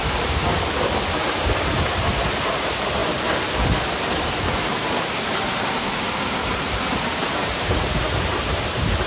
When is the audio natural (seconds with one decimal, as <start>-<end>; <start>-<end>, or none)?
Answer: 0.4-1.1; 3.0-5.2